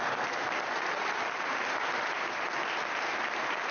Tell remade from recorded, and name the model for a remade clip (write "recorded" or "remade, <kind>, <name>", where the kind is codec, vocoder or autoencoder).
recorded